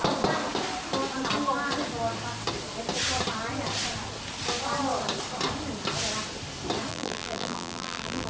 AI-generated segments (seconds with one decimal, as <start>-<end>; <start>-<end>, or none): 6.9-8.3